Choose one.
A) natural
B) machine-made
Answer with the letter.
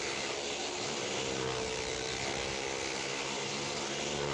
A